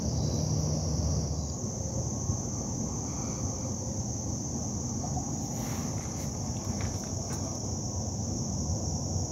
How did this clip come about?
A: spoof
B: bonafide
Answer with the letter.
B